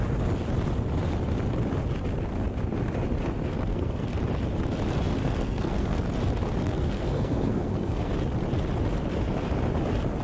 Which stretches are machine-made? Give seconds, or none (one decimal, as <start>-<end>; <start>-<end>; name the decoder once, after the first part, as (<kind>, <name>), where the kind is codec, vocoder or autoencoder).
3.7-4.2 (codec, SNAC); 5.2-6.0; 6.6-8.1